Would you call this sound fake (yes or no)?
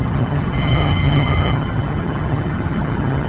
yes